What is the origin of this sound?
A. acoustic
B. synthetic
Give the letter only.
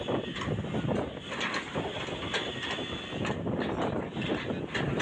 A